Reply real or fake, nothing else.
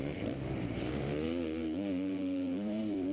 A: fake